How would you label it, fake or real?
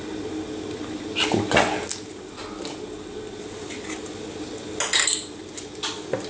real